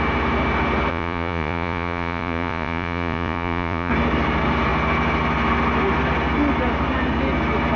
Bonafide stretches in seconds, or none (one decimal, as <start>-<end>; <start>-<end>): 0.0-0.9; 3.9-7.8